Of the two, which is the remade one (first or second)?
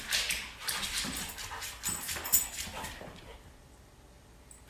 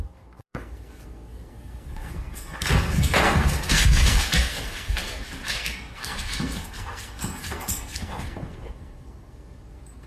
second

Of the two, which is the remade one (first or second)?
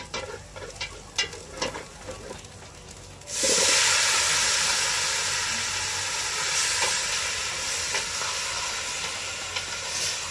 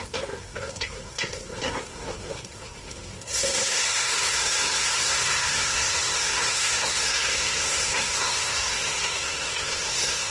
second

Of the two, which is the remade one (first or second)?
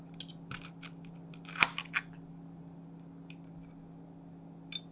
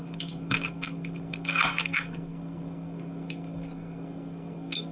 second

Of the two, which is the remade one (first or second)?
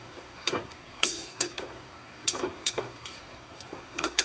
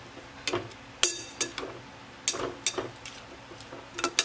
first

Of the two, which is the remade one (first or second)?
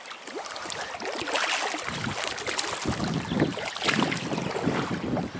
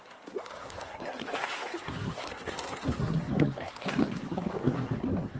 second